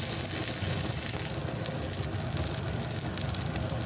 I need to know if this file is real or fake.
real